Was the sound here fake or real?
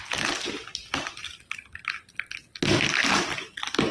real